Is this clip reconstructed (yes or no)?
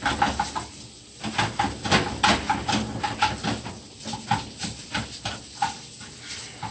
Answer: no